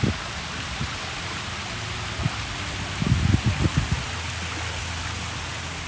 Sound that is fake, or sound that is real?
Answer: real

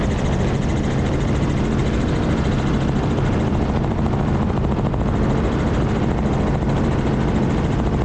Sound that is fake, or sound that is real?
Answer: real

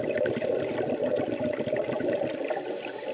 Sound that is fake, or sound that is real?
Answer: real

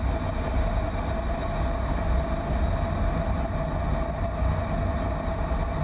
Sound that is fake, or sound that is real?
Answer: real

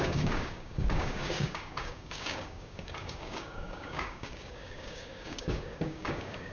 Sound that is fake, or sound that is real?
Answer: fake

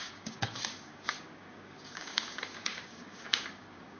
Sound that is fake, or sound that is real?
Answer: fake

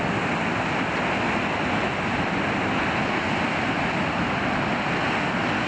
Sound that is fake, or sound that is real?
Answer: real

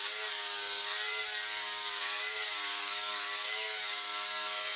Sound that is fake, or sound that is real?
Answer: fake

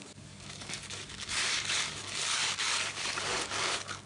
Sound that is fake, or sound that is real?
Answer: fake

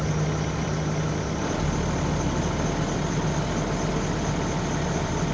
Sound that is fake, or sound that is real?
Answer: real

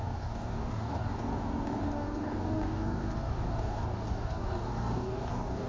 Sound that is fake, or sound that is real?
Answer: fake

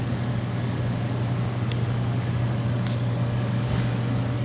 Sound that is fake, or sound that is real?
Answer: fake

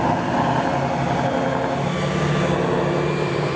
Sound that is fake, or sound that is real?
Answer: real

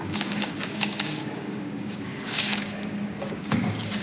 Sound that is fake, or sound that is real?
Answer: fake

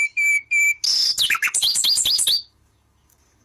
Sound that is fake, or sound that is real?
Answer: fake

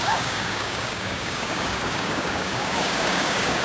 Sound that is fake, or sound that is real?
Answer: fake